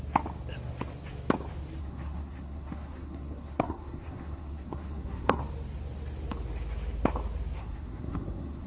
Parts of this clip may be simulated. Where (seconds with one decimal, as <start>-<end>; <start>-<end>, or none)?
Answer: 1.8-5.4; 7.6-8.7